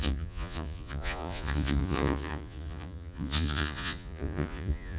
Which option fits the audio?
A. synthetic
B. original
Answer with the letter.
A